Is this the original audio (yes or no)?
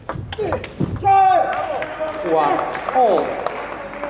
yes